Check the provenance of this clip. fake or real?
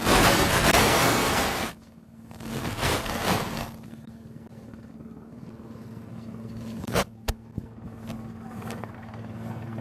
fake